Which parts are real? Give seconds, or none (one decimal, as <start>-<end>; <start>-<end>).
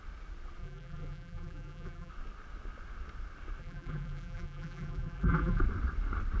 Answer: 0.0-0.6; 2.1-3.6; 5.6-6.4